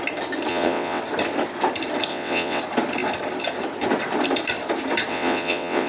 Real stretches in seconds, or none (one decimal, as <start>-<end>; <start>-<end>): 0.0-0.5; 1.0-2.1; 2.6-5.1